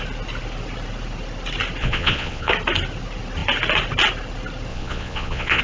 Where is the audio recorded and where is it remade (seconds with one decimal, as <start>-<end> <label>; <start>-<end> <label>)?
0.0-1.8 recorded; 1.8-2.5 remade; 2.5-4.7 recorded; 4.7-5.6 remade